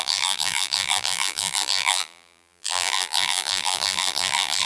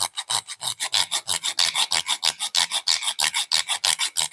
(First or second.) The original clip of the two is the second